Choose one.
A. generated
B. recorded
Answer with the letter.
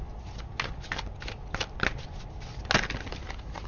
B